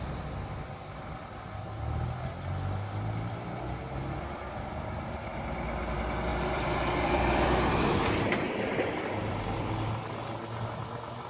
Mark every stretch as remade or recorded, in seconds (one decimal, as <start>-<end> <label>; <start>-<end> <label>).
0.0-6.3 recorded; 6.3-10.0 remade; 10.0-11.3 recorded